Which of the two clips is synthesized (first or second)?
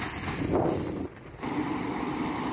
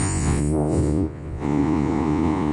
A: second